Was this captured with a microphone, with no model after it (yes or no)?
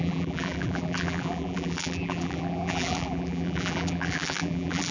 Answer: no